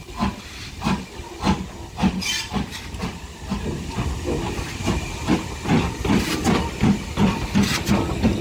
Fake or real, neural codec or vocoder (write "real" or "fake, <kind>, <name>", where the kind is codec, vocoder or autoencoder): real